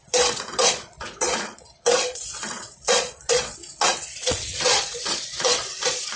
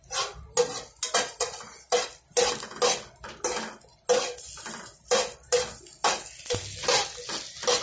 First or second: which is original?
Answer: second